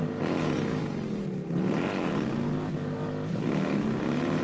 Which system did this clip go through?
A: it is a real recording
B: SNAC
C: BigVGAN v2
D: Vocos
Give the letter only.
A